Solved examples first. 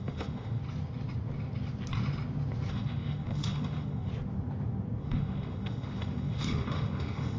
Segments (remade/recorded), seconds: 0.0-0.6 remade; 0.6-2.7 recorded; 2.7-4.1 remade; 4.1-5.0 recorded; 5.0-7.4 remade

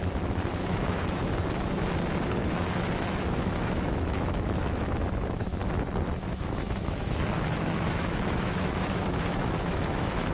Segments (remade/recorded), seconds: 0.0-1.2 remade; 1.2-2.3 recorded; 2.3-5.6 remade; 5.6-6.2 recorded; 6.2-10.3 remade

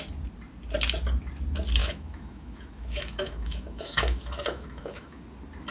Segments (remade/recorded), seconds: 0.0-1.8 recorded; 1.8-5.2 remade; 5.2-5.7 recorded

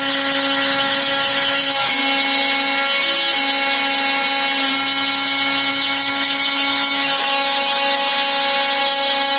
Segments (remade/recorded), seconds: 0.0-2.0 remade; 2.0-5.7 recorded; 5.7-8.1 remade; 8.1-8.8 recorded; 8.8-9.4 remade

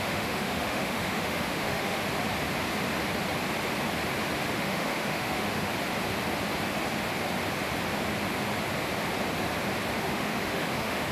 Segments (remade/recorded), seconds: 0.0-2.0 remade; 2.0-4.5 recorded; 4.5-5.7 remade; 5.7-10.0 recorded; 10.0-11.1 remade

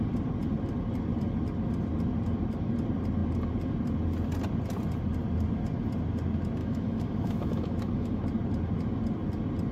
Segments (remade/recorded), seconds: 0.0-6.6 recorded; 6.6-8.2 remade; 8.2-9.7 recorded

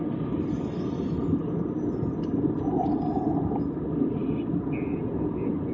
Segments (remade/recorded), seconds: 0.0-5.7 recorded